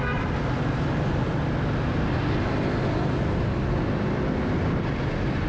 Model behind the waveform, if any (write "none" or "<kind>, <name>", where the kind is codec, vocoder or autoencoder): none